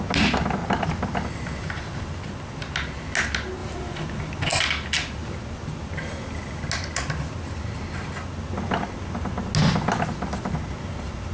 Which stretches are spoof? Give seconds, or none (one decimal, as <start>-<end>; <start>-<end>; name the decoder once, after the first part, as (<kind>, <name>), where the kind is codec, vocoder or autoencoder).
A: 0.6-2.2 (vocoder, BigVGAN v2)